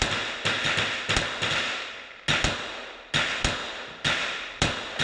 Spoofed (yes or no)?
no